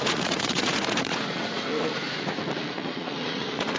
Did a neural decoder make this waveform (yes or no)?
yes